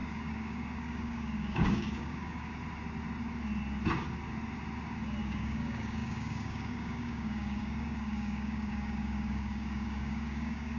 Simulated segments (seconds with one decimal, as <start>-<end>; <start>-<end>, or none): 0.0-2.5; 5.2-10.8